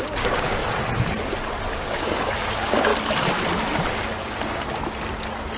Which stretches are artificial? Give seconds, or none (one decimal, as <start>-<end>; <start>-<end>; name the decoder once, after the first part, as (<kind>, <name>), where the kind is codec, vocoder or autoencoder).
0.0-0.6 (codec, DAC); 1.7-2.9